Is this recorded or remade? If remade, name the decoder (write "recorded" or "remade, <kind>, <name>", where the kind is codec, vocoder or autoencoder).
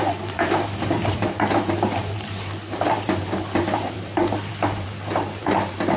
remade, vocoder, BigVGAN v2